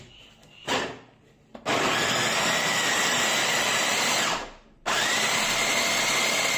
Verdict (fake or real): real